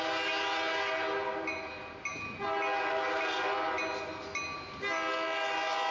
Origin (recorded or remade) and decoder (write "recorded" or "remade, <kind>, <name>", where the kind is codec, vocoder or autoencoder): recorded